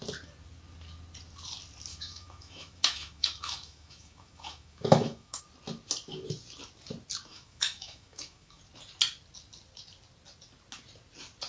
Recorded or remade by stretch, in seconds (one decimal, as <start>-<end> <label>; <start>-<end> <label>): 0.0-1.9 recorded; 1.9-5.4 remade; 5.4-7.3 recorded; 7.3-8.6 remade; 8.6-11.5 recorded

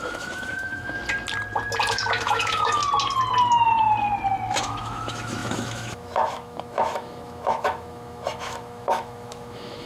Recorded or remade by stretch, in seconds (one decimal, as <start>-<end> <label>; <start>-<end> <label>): 0.0-1.0 remade; 1.0-1.9 recorded; 1.9-2.8 remade; 2.8-4.6 recorded; 4.6-9.9 remade

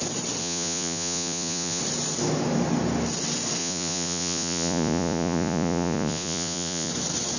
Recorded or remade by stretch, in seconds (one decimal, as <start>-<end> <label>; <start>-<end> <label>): 0.0-0.4 recorded; 0.4-1.8 remade; 1.8-3.6 recorded; 3.6-6.9 remade; 6.9-7.4 recorded

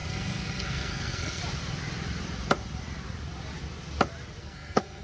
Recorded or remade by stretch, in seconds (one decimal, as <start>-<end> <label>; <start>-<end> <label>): 0.0-1.4 remade; 1.4-4.4 recorded; 4.4-5.0 remade

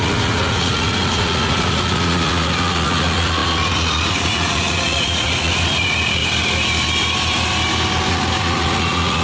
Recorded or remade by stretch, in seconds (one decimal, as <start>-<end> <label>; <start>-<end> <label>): 0.0-6.2 remade; 6.2-8.1 recorded; 8.1-9.2 remade

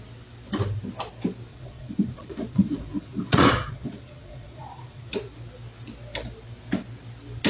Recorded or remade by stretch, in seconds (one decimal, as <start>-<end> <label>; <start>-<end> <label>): 0.0-1.5 recorded; 1.5-5.1 remade; 5.1-7.5 recorded

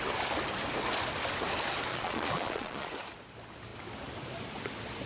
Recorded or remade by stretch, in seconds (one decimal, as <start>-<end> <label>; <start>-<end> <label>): 0.0-1.9 recorded; 1.9-2.9 remade; 2.9-5.1 recorded

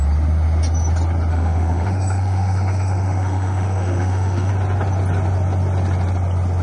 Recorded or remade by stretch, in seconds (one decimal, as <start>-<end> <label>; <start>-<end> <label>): 0.0-1.3 recorded; 1.3-4.5 remade; 4.5-6.6 recorded